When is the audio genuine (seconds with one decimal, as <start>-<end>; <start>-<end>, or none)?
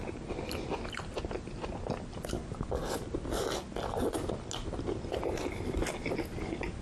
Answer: 0.0-6.8